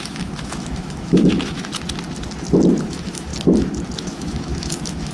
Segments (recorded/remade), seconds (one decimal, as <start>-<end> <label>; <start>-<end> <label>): 0.0-1.7 remade; 1.7-2.8 recorded; 2.8-3.3 remade; 3.3-4.0 recorded; 4.0-5.1 remade